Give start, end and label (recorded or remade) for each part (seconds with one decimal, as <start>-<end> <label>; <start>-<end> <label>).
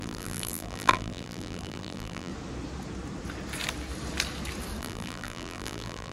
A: 0.0-2.3 remade; 2.3-4.8 recorded; 4.8-6.1 remade